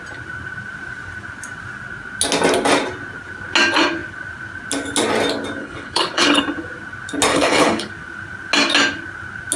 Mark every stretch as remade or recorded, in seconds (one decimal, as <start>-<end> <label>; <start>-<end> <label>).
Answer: 0.0-5.6 recorded; 5.6-6.4 remade; 6.4-7.3 recorded; 7.3-7.9 remade; 7.9-9.6 recorded